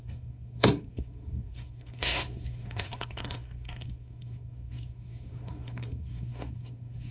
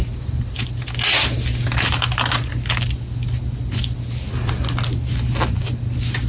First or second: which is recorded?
second